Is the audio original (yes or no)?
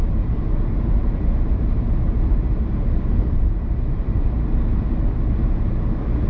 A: no